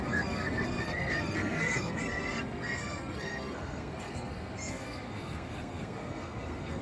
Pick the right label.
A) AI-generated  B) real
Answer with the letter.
A